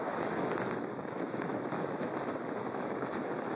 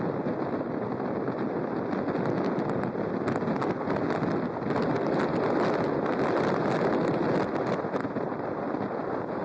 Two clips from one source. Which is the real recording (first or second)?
second